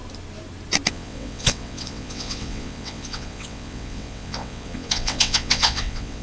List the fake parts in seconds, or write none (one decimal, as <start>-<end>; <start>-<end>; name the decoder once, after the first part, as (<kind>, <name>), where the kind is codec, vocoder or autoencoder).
0.9-6.2 (vocoder, WaveNeXt)